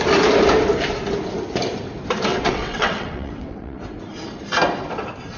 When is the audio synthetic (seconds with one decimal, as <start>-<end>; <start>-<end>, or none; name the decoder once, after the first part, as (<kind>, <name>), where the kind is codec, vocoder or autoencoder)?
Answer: 2.3-3.8 (vocoder, WaveNeXt)